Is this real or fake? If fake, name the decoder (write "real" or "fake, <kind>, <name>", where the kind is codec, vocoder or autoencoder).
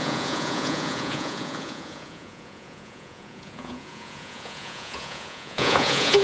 fake, vocoder, Vocos